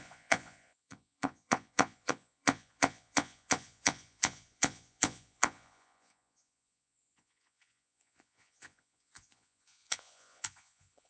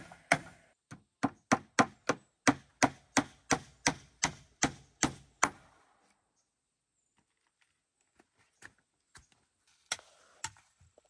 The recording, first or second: second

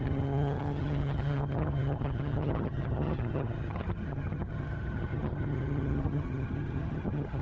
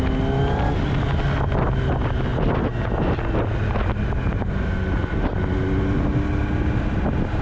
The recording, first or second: second